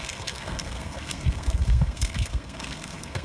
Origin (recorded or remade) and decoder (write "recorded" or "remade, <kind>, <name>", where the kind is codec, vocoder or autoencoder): remade, codec, SNAC